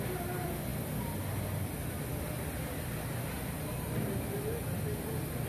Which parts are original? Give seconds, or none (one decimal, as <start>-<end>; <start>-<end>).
0.0-5.5